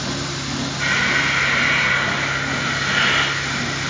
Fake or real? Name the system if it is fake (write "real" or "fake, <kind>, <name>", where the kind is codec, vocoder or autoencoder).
real